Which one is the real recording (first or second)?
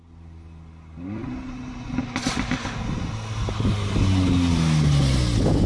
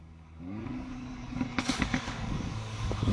first